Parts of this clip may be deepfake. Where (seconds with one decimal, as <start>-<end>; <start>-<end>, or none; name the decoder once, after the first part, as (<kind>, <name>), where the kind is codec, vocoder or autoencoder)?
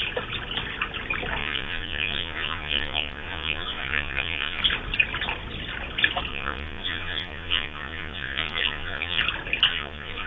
1.4-4.6 (vocoder, Vocos); 6.3-9.2; 9.7-10.3